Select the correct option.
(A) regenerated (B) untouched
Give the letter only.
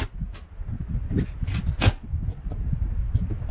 B